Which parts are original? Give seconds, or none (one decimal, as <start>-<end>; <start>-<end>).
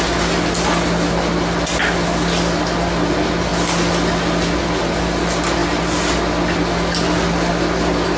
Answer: 0.0-8.2